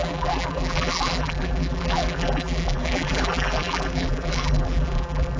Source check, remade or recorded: remade